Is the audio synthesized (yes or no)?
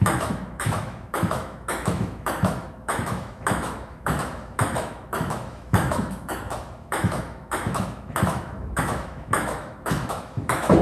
yes